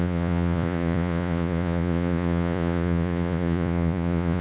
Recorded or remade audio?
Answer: remade